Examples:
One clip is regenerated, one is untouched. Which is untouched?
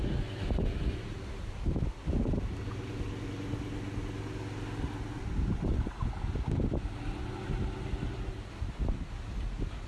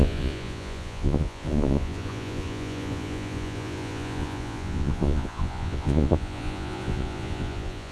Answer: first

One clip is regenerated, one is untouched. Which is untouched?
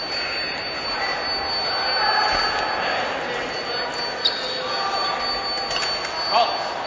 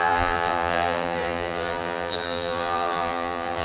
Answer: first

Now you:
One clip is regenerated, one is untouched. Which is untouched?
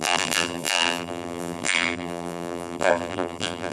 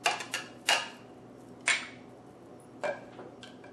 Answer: second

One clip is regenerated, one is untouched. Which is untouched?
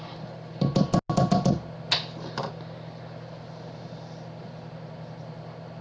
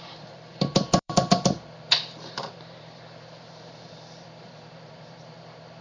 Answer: first